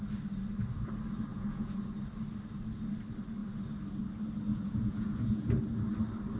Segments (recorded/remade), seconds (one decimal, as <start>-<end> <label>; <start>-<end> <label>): 0.0-1.3 recorded; 1.3-1.9 remade; 1.9-4.5 recorded; 4.5-5.6 remade; 5.6-6.4 recorded